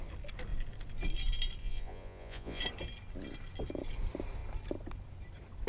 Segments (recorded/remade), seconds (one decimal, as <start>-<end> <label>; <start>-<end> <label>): 0.0-1.6 recorded; 1.6-2.6 remade; 2.6-5.7 recorded